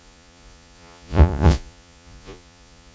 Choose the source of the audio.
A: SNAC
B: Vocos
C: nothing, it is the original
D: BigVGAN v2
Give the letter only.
B